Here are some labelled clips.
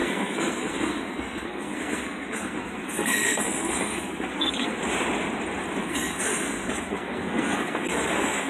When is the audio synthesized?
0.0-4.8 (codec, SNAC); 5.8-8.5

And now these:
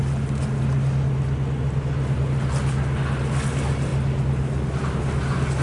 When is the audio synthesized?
none

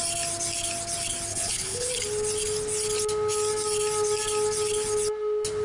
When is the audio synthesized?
1.3-1.9 (codec, HILCodec)

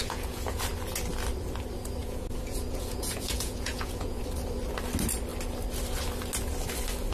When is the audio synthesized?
0.0-0.6 (vocoder, Vocos); 2.0-4.2

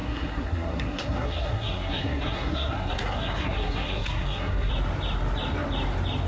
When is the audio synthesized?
0.0-4.7 (codec, SNAC)

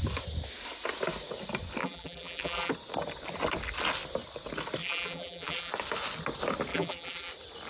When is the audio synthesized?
1.8-2.7 (vocoder, BigVGAN v2); 4.8-5.7; 6.7-7.3

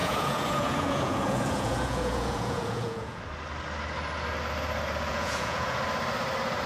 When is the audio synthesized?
0.0-3.2 (vocoder, Vocos); 5.1-5.8